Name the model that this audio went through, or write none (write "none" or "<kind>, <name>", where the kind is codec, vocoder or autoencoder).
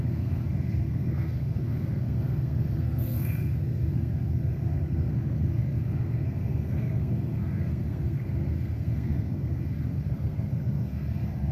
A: codec, SNAC